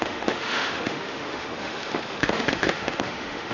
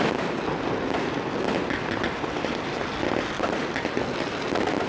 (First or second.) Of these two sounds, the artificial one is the first